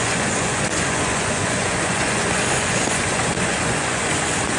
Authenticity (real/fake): fake